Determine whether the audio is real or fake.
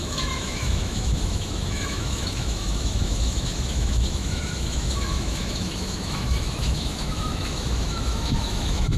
fake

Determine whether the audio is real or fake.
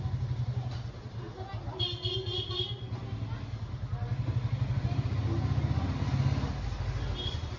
real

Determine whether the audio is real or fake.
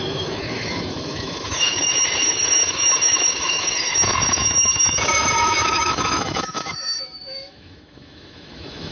fake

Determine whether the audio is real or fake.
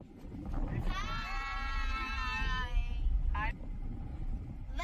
real